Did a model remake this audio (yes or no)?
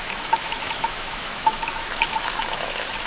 yes